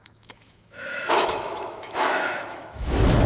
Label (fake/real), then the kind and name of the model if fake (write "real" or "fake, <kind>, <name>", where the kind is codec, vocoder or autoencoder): fake, autoencoder, DAC-VAE